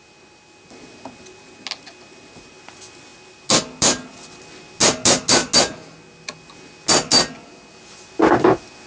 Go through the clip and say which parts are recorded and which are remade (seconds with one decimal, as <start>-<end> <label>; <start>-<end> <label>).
0.0-8.9 recorded